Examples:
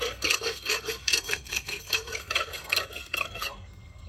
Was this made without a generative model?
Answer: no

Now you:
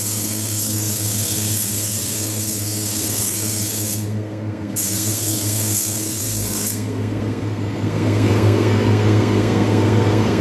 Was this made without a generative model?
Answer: no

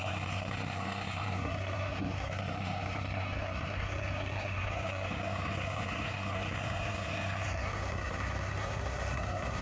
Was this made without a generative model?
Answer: no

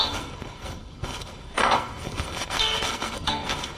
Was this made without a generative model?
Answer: no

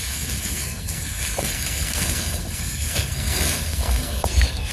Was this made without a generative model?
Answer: no